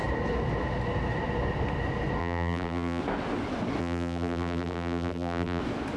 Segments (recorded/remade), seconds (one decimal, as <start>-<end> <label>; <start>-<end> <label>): 0.0-2.2 recorded; 2.2-3.0 remade; 3.0-3.8 recorded; 3.8-5.6 remade; 5.6-6.0 recorded